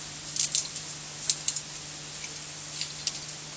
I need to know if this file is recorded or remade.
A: recorded